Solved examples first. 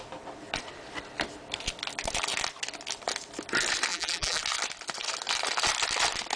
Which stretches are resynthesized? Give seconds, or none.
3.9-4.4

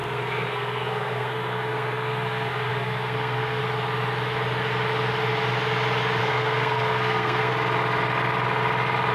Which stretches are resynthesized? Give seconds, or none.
0.0-3.6; 6.2-7.5

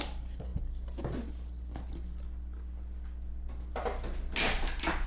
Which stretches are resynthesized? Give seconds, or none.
none

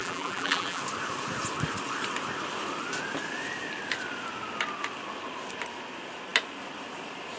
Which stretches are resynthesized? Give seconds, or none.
0.0-0.8

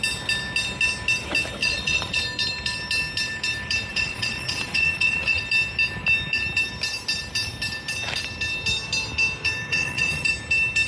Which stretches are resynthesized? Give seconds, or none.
1.6-2.2; 3.9-5.4; 9.7-10.3

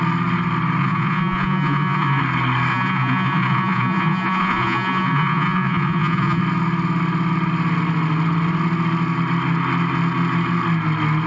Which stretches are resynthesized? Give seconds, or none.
0.8-2.2; 2.7-6.4

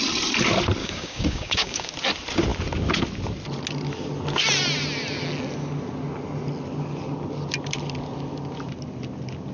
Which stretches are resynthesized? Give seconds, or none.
0.8-1.9

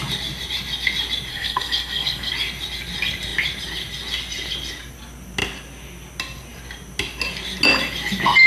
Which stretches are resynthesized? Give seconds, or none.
1.3-2.3